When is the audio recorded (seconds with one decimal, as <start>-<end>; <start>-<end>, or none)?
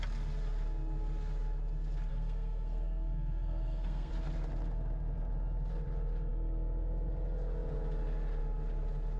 0.0-2.1; 4.1-9.2